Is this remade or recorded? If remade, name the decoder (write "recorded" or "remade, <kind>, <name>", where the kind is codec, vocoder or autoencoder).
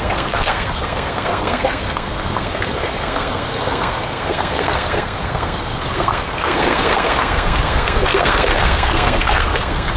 remade, codec, SNAC